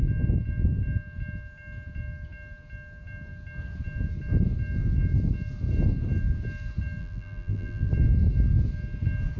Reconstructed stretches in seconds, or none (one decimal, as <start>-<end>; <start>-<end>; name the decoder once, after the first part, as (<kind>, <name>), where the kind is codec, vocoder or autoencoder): 7.0-7.9 (vocoder, BigVGAN v2)